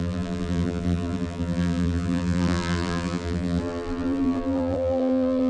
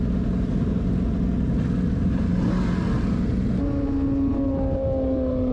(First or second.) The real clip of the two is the second